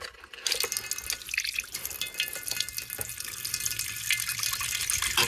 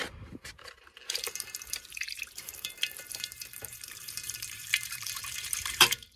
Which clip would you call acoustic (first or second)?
first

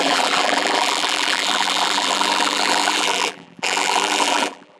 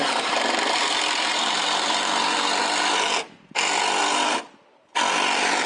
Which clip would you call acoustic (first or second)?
second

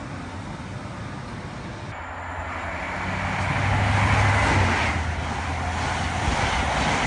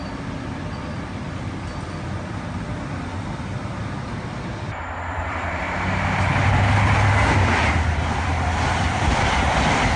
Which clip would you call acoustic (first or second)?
first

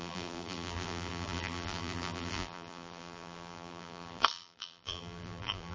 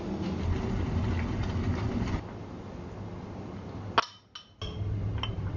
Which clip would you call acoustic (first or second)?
second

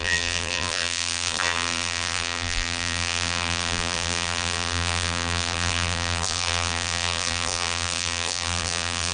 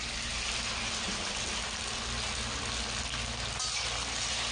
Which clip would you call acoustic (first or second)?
second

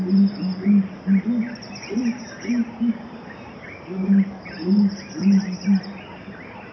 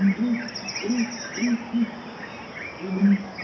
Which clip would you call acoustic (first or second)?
second